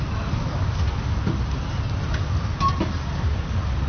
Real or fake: real